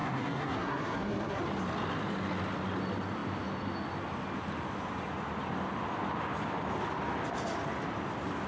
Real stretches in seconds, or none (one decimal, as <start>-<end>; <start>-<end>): 1.4-8.5